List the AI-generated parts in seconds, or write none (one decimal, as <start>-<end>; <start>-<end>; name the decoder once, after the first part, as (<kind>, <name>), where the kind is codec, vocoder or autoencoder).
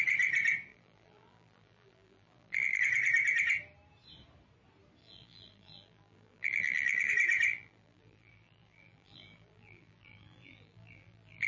0.7-2.8 (vocoder, BigVGAN v2); 5.0-7.1; 7.5-11.5